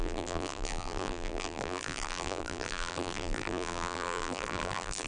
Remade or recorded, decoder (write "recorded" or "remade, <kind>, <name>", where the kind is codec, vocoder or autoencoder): remade, vocoder, BigVGAN v2